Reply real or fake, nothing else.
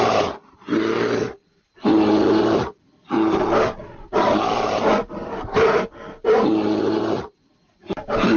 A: real